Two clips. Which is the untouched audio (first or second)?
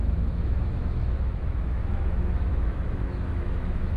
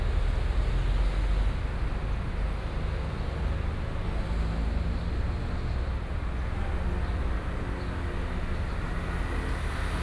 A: second